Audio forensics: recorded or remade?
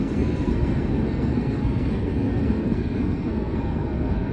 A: remade